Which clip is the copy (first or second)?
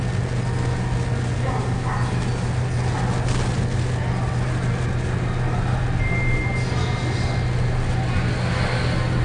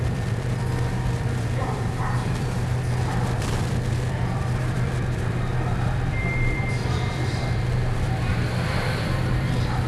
second